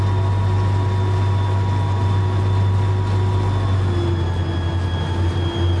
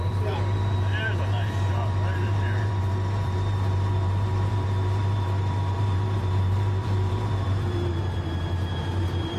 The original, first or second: first